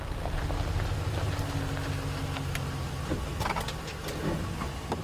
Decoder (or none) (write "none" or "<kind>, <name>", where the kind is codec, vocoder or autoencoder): none